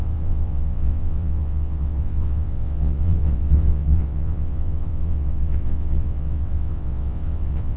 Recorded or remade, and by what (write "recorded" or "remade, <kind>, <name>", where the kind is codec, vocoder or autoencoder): remade, vocoder, WaveNeXt